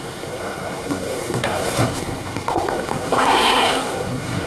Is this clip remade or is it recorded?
remade